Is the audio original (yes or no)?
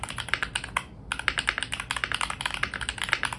yes